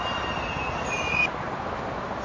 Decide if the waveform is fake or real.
real